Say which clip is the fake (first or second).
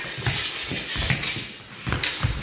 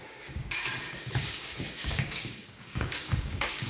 second